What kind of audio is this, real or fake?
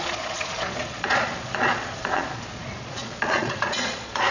fake